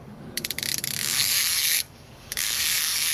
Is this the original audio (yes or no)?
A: no